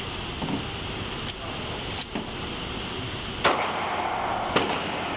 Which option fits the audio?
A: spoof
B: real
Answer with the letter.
B